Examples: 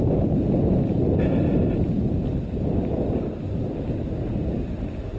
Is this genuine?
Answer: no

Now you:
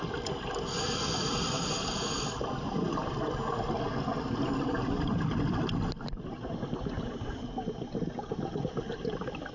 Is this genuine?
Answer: yes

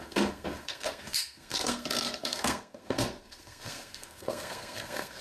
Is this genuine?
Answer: no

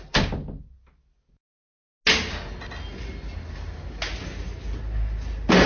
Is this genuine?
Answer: yes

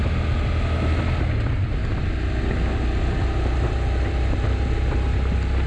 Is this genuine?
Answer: yes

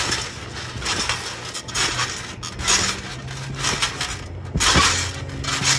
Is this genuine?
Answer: yes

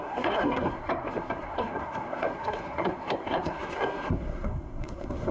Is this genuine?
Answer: no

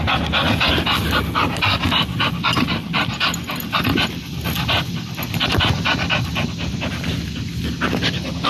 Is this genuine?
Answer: yes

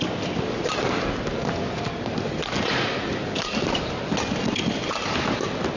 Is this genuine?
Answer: yes